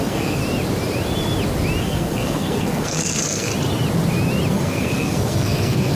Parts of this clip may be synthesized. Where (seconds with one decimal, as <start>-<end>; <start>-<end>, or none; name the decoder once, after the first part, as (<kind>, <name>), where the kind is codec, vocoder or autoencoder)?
0.0-0.4 (codec, SNAC); 1.8-3.5; 4.5-5.9